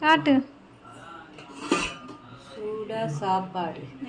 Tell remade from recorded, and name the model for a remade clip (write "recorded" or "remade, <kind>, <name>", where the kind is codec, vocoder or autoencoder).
recorded